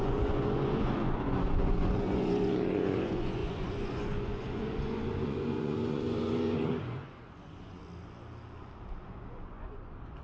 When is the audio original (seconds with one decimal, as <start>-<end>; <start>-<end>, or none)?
7.8-9.0